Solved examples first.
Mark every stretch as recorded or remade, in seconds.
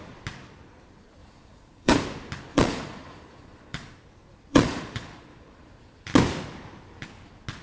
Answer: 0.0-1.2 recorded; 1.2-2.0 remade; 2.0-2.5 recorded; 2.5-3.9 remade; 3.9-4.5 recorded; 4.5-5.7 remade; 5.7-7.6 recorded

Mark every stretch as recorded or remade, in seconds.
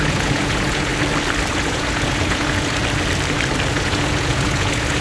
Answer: 0.0-0.9 remade; 0.9-1.5 recorded; 1.5-2.8 remade; 2.8-3.7 recorded; 3.7-5.0 remade